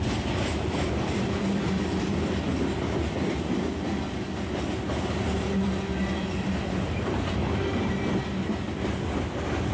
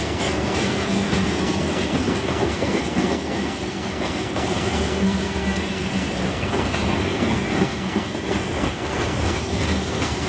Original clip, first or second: first